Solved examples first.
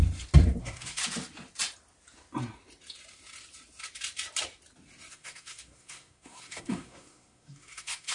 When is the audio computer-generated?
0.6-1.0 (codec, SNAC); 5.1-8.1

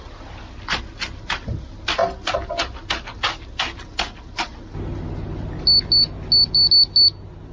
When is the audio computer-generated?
none

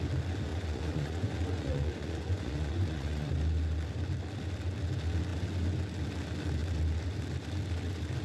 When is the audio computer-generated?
0.5-3.3 (vocoder, Vocos)

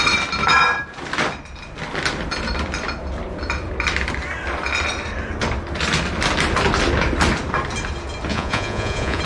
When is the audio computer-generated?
8.3-9.2 (vocoder, Vocos)

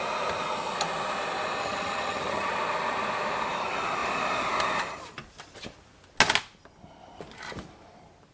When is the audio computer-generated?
1.6-2.5 (vocoder, HiFi-GAN)

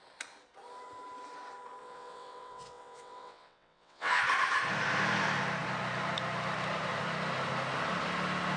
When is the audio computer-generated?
1.8-4.2 (vocoder, WaveNeXt)

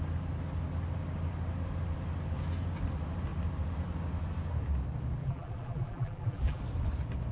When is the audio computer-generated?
5.2-6.6 (vocoder, BigVGAN v2)